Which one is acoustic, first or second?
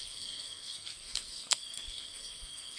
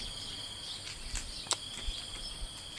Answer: second